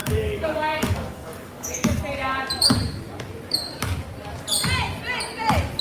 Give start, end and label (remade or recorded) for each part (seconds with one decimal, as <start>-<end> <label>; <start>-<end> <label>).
0.0-2.0 remade; 2.0-5.8 recorded